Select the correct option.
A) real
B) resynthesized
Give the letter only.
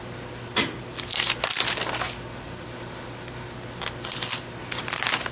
A